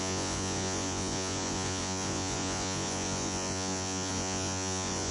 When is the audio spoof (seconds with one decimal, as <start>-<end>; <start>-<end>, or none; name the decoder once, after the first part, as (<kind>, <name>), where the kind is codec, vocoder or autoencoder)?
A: 0.0-5.1 (vocoder, Vocos)